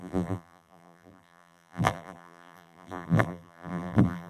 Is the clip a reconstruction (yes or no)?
yes